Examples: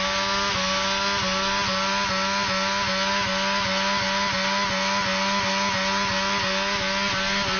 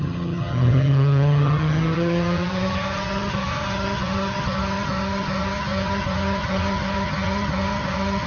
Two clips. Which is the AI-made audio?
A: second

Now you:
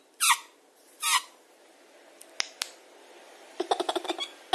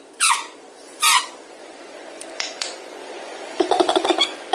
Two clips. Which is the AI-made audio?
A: second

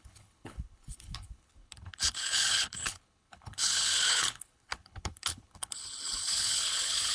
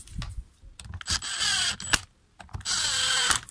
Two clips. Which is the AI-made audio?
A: first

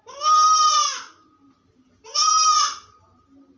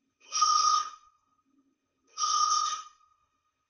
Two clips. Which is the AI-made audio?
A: second